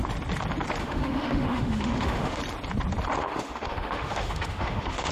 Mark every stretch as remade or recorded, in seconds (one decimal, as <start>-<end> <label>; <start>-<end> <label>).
0.0-0.8 recorded; 0.8-2.4 remade; 2.4-3.2 recorded; 3.2-5.1 remade